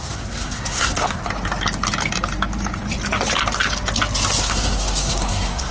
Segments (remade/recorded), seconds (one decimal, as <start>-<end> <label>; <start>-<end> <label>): 0.0-1.2 remade; 1.2-4.4 recorded; 4.4-5.7 remade